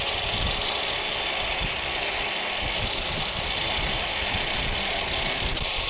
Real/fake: real